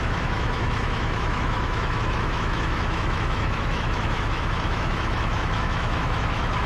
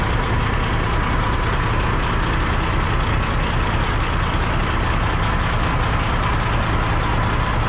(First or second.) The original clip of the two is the second